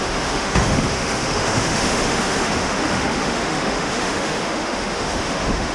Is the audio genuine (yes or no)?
no